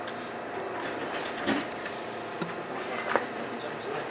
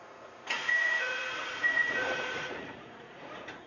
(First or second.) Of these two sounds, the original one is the first